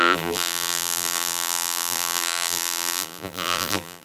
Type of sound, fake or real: fake